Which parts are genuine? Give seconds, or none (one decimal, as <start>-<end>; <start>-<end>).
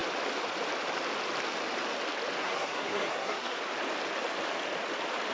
0.0-2.4; 3.6-5.3